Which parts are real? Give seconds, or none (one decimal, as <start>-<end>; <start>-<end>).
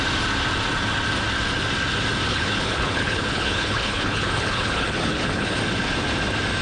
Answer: 0.0-2.3; 5.6-6.6